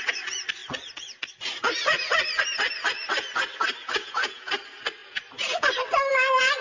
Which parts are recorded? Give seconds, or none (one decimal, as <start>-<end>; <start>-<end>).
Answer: 0.0-3.8; 4.5-6.6